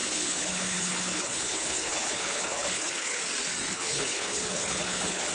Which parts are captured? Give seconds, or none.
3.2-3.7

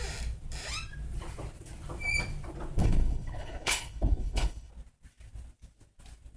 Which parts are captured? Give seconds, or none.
0.0-2.8; 4.7-6.4

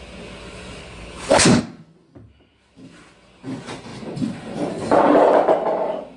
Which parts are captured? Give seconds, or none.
0.0-0.8; 1.6-6.2

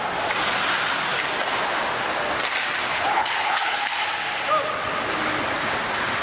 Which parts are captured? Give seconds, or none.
0.0-2.9; 4.0-6.2

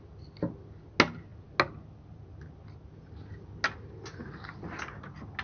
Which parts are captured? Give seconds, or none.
0.0-5.4

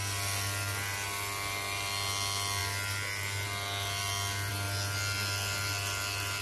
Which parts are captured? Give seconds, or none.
0.0-6.4